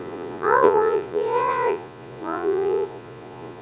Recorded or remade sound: remade